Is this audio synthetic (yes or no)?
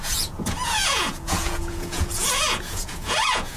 yes